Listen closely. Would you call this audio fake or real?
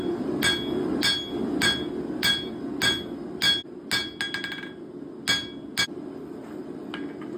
real